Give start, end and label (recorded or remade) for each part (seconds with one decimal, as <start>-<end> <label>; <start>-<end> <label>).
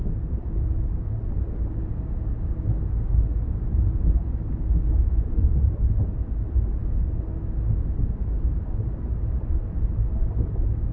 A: 0.0-10.9 recorded